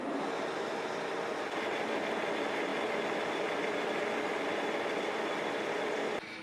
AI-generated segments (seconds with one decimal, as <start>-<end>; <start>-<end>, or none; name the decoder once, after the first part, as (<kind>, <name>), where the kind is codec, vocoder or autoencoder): none